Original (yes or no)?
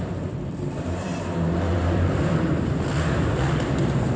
no